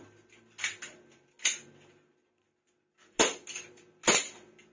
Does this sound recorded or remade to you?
recorded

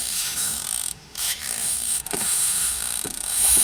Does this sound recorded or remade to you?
remade